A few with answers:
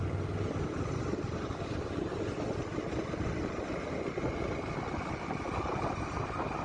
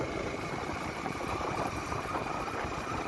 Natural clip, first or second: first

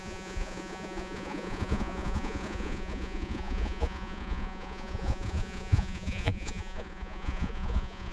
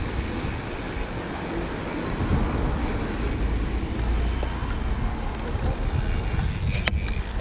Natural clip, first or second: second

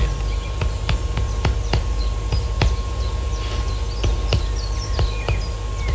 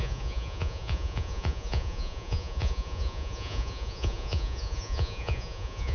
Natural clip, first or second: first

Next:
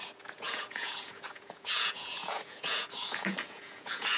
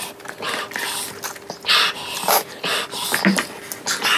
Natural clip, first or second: second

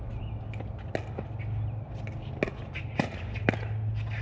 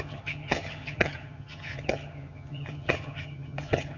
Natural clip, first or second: first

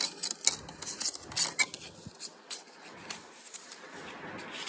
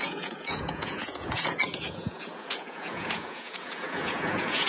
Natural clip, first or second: first